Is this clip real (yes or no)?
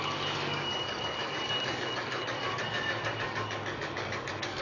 no